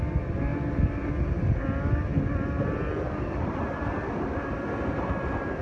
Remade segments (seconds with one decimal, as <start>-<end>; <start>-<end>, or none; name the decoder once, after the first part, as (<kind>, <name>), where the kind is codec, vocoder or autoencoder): 0.5-1.1 (vocoder, BigVGAN v2)